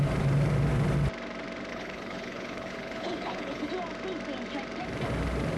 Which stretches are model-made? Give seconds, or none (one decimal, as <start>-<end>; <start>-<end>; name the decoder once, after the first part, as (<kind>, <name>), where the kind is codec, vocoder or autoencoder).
1.7-3.7 (codec, HILCodec)